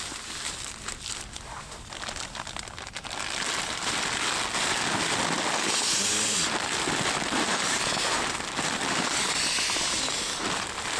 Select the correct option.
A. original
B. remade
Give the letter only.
A